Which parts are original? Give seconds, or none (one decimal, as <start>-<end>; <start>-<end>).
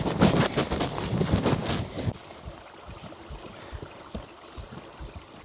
0.0-5.4